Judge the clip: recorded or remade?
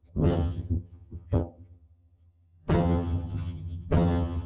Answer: remade